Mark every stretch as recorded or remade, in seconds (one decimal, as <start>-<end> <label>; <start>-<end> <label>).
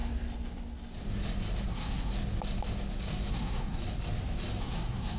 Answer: 0.0-1.7 recorded; 1.7-2.1 remade; 2.1-3.3 recorded; 3.3-3.8 remade; 3.8-4.6 recorded; 4.6-5.2 remade